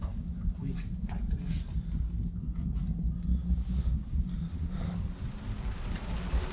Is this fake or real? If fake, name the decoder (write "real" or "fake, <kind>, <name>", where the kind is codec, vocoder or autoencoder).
real